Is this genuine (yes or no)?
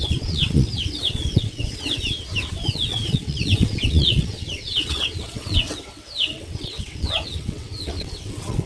no